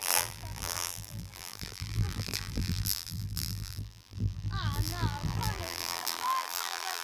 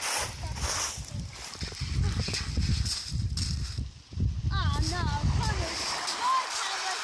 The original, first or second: second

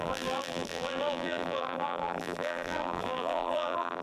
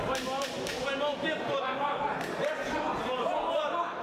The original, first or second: second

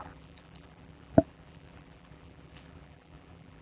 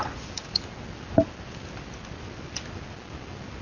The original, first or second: second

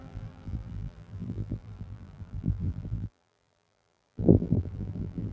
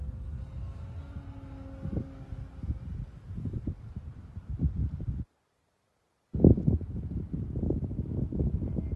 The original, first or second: second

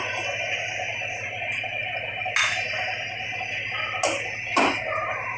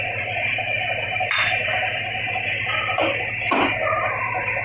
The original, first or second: first